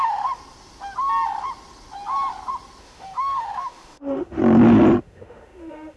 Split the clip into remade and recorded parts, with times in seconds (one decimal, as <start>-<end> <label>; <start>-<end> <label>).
0.0-0.4 remade; 0.4-2.8 recorded; 2.8-4.4 remade; 4.4-5.0 recorded; 5.0-6.0 remade